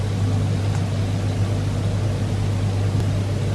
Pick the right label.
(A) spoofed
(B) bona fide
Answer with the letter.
B